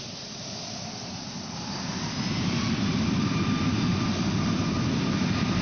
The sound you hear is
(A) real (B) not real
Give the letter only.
A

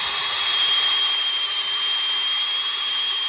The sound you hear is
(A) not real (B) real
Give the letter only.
B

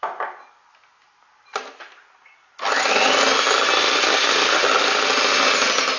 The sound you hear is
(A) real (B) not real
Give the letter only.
A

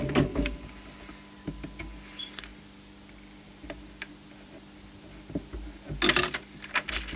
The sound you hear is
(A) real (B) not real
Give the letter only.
A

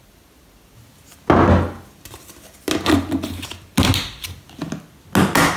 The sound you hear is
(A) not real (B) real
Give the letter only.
B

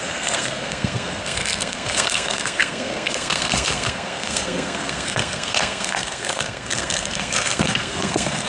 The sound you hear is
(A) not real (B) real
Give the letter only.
A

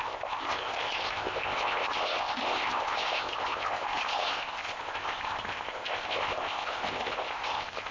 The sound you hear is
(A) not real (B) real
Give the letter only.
A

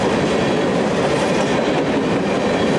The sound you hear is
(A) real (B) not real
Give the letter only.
A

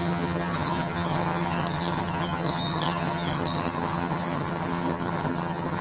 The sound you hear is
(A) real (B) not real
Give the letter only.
B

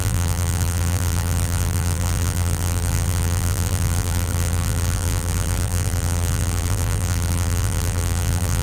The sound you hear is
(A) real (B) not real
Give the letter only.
B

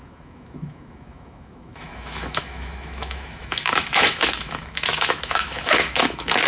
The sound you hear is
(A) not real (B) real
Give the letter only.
A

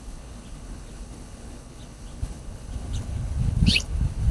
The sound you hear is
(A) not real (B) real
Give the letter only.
A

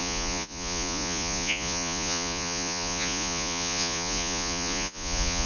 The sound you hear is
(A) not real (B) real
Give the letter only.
A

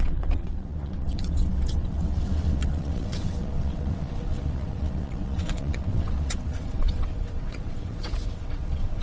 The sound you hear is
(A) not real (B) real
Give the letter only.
A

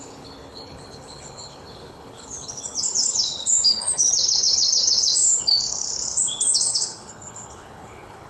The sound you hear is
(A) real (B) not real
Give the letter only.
B